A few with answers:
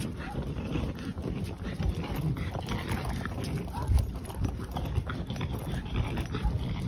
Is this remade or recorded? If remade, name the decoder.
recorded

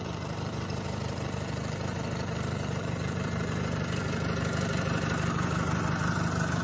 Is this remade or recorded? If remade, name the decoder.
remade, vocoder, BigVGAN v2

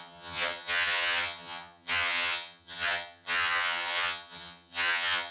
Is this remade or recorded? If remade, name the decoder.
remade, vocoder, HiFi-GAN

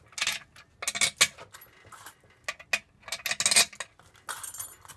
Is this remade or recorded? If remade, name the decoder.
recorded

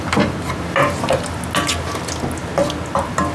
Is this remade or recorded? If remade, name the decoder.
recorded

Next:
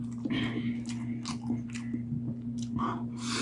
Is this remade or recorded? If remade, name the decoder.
recorded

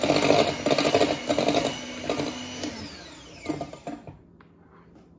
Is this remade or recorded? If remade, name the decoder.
recorded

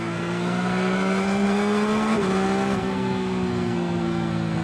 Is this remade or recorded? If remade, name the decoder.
remade, codec, SNAC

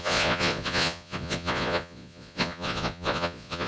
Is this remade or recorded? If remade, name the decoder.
remade, vocoder, Vocos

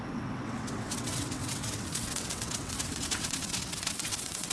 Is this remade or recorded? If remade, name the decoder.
remade, vocoder, WaveNeXt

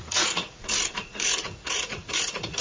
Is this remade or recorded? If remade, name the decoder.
remade, vocoder, Vocos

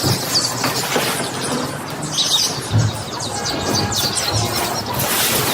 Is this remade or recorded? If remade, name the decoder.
recorded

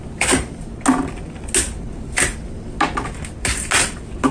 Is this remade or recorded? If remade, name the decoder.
recorded